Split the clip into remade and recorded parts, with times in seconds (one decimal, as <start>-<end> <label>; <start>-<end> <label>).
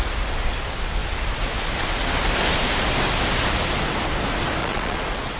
0.0-4.6 recorded; 4.6-5.4 remade